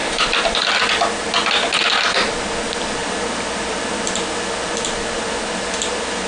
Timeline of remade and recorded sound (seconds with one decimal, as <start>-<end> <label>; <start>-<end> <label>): 0.0-0.7 remade; 0.7-6.3 recorded